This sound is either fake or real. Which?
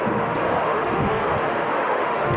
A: fake